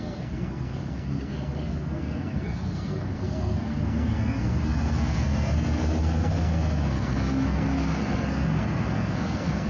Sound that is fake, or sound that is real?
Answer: fake